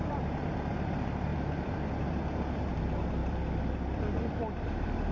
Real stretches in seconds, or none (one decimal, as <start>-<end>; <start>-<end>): none